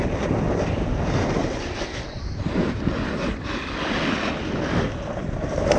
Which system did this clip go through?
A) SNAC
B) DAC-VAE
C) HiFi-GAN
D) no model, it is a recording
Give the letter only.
D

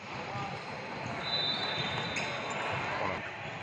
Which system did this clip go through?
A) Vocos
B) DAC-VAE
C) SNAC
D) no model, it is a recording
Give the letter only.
D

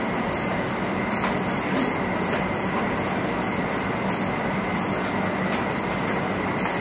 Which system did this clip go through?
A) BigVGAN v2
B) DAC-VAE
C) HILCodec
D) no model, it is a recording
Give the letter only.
D